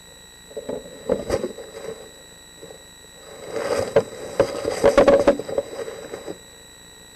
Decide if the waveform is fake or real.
real